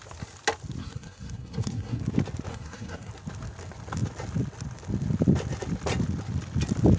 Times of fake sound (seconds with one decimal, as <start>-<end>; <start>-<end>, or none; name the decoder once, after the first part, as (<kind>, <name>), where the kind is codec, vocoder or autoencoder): 0.8-2.0 (codec, SNAC); 2.5-3.1